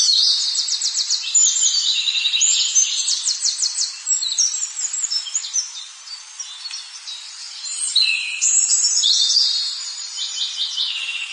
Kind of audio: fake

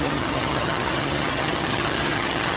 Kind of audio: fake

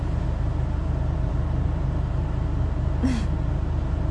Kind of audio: real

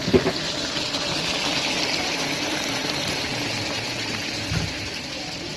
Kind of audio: real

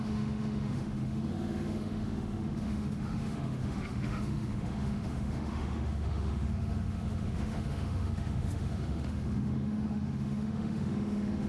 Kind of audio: fake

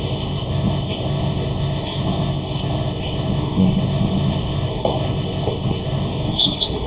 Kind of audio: fake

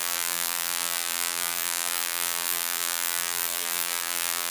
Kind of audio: fake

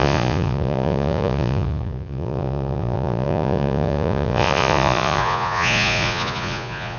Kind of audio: fake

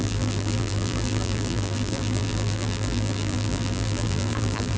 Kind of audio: fake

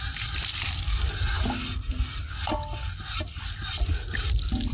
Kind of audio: real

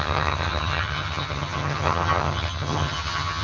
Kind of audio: fake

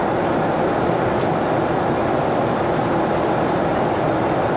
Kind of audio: real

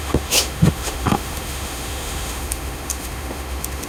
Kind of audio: fake